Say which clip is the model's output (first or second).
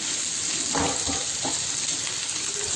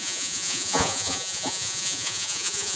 second